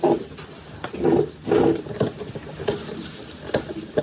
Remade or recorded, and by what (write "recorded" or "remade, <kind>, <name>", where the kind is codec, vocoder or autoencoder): recorded